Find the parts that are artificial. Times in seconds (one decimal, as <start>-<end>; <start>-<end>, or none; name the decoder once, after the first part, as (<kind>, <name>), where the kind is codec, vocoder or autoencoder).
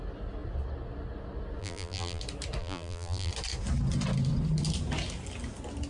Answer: 1.6-2.2 (vocoder, BigVGAN v2); 2.6-3.3